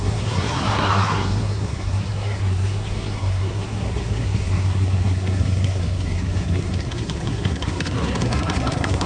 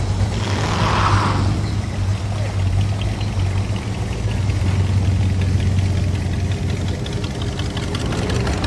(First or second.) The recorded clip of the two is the second